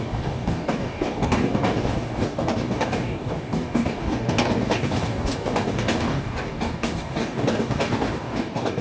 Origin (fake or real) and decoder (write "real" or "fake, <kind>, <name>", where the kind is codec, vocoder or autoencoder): fake, codec, DAC